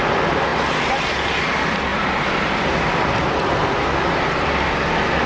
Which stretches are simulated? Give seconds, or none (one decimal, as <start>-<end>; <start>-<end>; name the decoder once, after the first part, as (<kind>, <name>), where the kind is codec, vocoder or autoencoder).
none